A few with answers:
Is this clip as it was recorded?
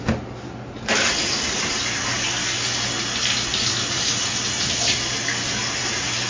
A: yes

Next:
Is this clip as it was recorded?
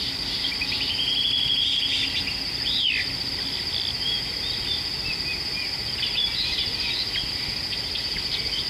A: yes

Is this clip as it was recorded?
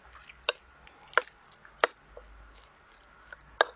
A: yes